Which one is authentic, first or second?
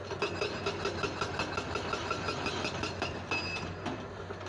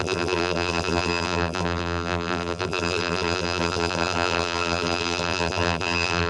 first